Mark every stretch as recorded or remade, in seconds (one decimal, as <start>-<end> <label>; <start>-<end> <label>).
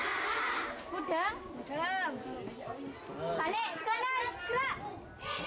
0.0-5.5 recorded